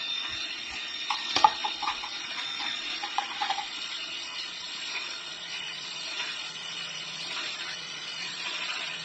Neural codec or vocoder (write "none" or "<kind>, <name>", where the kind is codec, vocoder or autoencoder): vocoder, Vocos